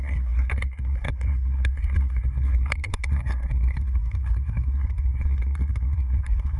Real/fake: fake